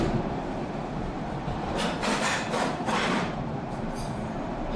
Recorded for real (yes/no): no